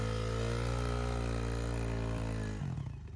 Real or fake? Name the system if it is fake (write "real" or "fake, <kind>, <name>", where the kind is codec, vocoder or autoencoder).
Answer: real